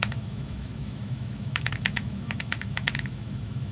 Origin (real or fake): fake